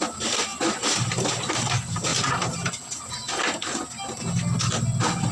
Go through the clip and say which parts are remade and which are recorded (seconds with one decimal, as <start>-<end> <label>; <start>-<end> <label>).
0.0-5.3 recorded